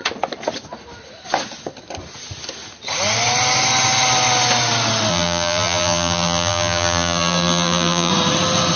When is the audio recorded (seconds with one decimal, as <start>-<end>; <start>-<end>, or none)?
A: 0.0-5.1; 8.1-8.8